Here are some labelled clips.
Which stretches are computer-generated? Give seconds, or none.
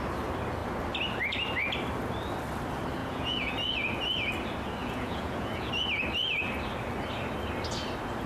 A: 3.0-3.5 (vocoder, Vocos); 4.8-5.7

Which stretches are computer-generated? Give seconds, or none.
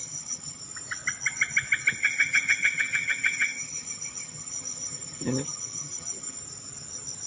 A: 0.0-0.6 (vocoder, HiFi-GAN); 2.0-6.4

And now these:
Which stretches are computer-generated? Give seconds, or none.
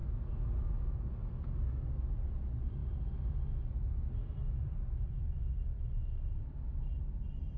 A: none